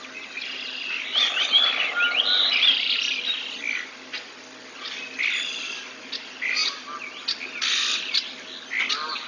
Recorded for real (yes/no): yes